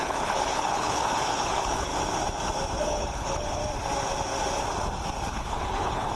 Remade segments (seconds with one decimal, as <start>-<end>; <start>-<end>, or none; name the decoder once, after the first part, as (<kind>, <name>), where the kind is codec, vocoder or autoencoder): 0.0-1.9 (codec, HILCodec); 2.8-3.6; 5.2-6.2